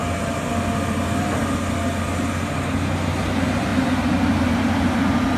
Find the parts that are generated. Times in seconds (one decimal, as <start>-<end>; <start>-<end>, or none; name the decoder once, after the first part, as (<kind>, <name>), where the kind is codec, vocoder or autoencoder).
none